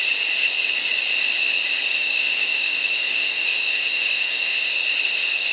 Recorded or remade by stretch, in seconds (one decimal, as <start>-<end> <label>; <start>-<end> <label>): 0.0-2.0 recorded; 2.0-4.7 remade; 4.7-5.5 recorded